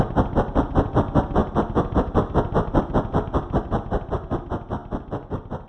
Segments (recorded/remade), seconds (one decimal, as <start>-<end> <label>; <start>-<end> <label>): 0.0-5.7 recorded